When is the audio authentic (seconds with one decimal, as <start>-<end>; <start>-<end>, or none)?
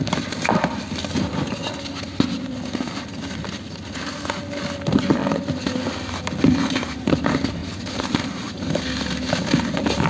0.0-7.6; 8.8-10.1